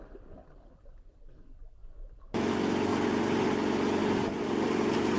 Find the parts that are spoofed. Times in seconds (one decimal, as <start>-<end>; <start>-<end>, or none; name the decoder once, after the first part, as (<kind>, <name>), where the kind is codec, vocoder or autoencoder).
2.9-3.5 (vocoder, BigVGAN v2); 4.0-5.2